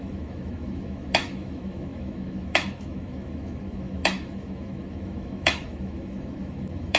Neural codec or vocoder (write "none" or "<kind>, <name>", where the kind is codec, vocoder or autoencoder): autoencoder, DAC-VAE